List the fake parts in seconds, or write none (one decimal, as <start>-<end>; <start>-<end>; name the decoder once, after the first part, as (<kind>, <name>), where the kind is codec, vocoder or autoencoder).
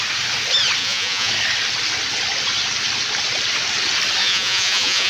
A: 0.8-1.3 (vocoder, Vocos); 4.2-5.1